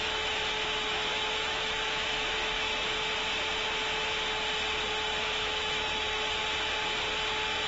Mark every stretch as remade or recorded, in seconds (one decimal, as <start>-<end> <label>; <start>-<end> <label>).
0.0-2.7 remade; 2.7-5.2 recorded; 5.2-6.4 remade; 6.4-7.7 recorded